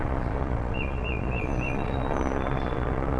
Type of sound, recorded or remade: remade